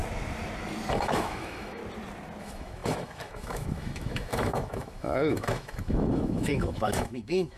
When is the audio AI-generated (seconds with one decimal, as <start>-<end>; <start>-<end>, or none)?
0.9-1.8; 2.4-7.6